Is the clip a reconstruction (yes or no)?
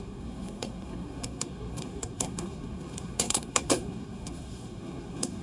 yes